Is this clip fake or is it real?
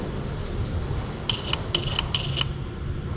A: real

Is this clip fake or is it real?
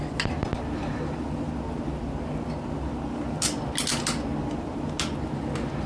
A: real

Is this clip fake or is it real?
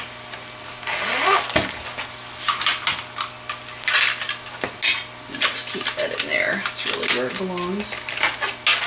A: real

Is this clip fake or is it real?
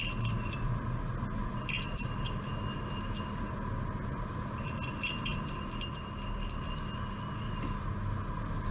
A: real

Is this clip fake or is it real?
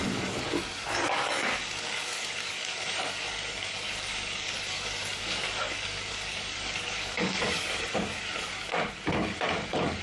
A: fake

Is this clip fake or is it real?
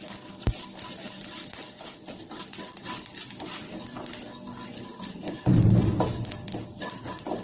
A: real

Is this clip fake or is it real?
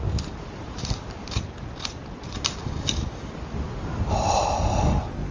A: real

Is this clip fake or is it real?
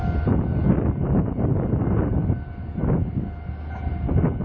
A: real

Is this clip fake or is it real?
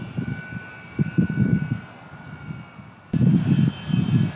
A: real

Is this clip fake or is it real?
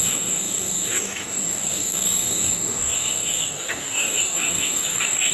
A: fake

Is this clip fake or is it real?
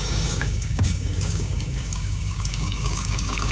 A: fake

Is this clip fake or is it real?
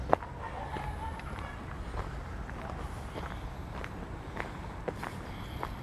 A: real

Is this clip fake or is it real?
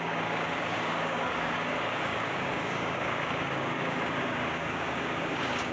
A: fake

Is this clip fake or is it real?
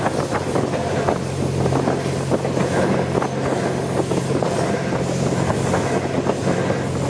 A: real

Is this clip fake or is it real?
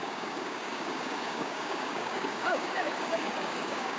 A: fake